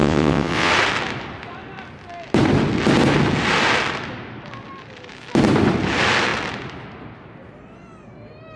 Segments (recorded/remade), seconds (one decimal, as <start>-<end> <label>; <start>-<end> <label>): 0.0-0.7 remade; 0.7-8.6 recorded